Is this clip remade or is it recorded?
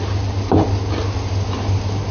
recorded